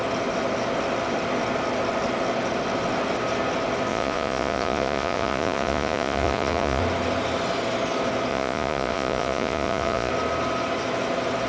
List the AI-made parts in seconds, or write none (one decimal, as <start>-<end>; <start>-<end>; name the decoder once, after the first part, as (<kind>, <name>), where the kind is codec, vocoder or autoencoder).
3.9-6.8 (vocoder, Vocos); 8.3-10.1